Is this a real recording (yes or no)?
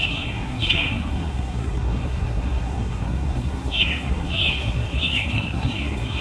no